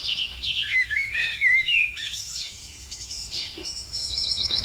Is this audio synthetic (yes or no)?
yes